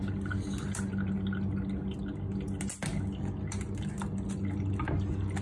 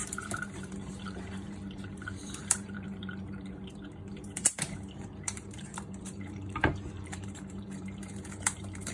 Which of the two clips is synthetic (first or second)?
second